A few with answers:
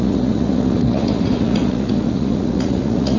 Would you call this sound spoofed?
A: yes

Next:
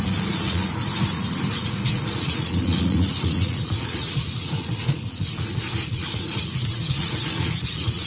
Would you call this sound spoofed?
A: yes